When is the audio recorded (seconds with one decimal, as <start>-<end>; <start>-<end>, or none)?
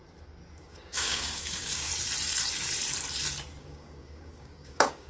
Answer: 0.0-0.6; 1.9-3.6